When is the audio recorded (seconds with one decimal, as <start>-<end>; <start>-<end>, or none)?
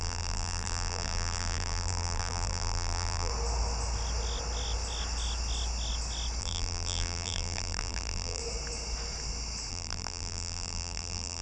3.3-6.4; 8.4-9.7